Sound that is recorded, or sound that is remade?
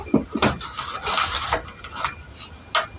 recorded